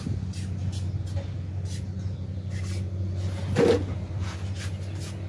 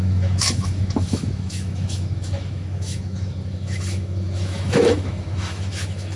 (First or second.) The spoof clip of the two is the second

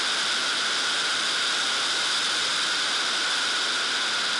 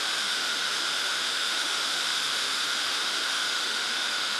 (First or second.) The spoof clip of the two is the second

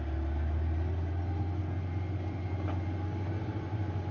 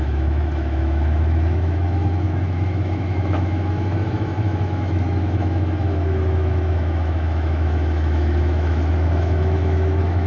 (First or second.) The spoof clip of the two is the second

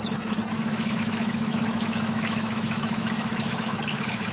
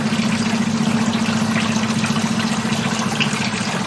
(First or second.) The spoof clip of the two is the first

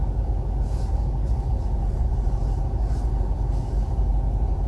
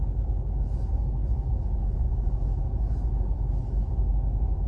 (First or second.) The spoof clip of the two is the second